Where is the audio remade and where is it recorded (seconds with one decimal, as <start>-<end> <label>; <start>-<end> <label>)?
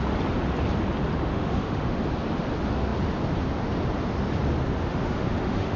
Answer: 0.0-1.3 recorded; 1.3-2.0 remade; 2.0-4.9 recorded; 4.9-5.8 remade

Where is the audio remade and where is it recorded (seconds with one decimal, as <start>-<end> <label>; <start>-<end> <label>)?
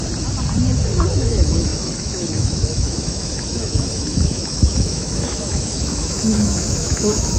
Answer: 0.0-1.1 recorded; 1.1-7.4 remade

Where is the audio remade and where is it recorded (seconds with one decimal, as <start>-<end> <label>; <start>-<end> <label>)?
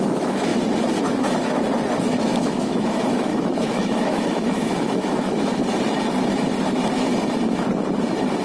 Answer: 0.0-0.5 remade; 0.5-2.1 recorded; 2.1-5.6 remade; 5.6-8.4 recorded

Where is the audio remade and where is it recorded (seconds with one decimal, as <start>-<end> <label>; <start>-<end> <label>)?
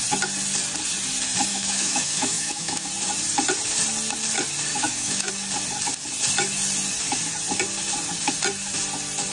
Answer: 0.0-1.5 recorded; 1.5-2.9 remade; 2.9-4.7 recorded; 4.7-5.3 remade; 5.3-9.3 recorded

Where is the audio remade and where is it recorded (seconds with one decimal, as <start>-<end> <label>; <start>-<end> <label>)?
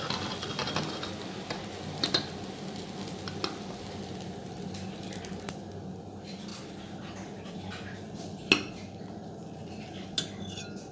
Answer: 0.0-10.9 recorded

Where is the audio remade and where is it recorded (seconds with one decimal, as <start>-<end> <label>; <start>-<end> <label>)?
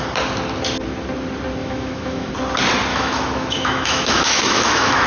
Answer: 0.0-1.6 recorded; 1.6-2.3 remade; 2.3-2.9 recorded; 2.9-5.1 remade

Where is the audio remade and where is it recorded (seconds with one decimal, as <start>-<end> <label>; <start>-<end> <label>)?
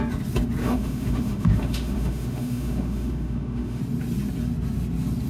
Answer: 0.0-0.6 recorded; 0.6-3.8 remade; 3.8-5.3 recorded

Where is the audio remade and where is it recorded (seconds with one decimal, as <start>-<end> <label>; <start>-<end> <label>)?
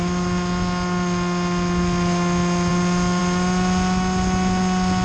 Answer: 0.0-5.0 recorded